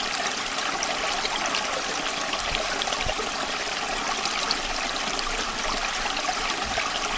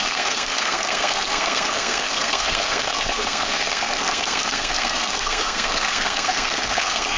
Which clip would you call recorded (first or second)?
first